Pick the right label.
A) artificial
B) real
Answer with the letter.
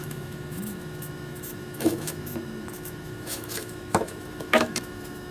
A